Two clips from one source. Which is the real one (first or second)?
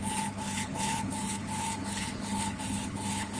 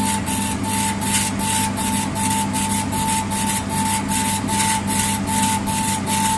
second